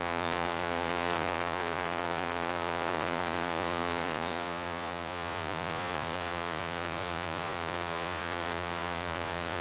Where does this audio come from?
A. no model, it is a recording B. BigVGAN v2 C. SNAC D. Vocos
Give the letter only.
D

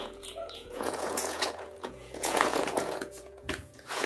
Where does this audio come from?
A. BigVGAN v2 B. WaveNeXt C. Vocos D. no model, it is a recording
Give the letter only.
C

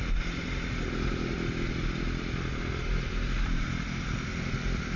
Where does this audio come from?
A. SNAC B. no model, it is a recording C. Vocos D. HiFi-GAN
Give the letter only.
B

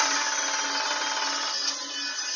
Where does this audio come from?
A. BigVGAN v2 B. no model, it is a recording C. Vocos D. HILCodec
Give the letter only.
B